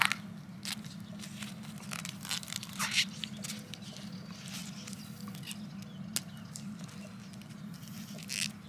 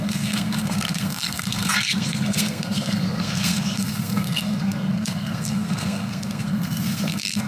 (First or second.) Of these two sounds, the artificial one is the second